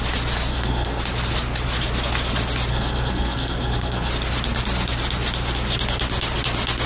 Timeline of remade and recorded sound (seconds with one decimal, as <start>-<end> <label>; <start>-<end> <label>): 0.0-0.5 recorded; 0.5-1.0 remade; 1.0-2.7 recorded; 2.7-4.1 remade; 4.1-6.9 recorded